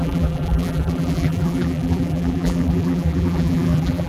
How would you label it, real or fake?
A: fake